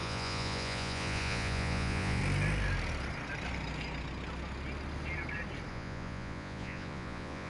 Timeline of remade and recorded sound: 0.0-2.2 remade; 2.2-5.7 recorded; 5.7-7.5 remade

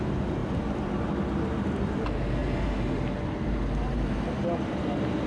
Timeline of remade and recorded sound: 0.0-5.3 recorded